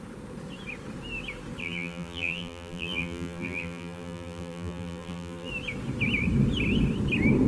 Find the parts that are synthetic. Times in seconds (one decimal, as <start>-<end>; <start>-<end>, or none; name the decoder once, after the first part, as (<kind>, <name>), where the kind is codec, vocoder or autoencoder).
1.6-5.5 (vocoder, BigVGAN v2)